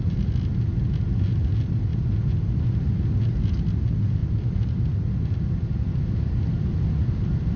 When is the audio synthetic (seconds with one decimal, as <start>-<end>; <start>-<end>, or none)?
1.9-2.6